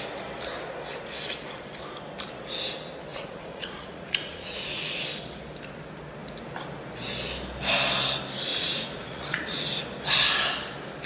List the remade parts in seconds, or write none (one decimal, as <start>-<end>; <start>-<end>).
3.1-5.0; 8.5-9.6